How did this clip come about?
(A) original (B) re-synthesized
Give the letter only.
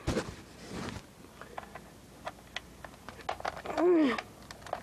A